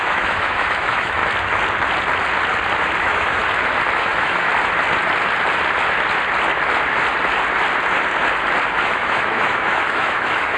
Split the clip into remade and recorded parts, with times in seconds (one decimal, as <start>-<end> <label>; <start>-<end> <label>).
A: 0.0-1.2 remade; 1.2-3.0 recorded; 3.0-3.4 remade; 3.4-4.0 recorded; 4.0-4.5 remade; 4.5-8.8 recorded; 8.8-10.6 remade